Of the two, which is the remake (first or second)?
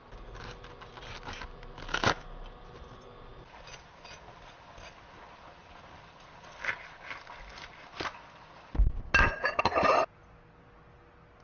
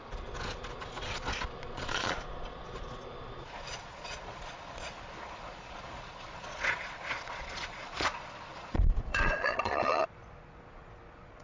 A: second